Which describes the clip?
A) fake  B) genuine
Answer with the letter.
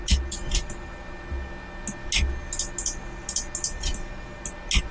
B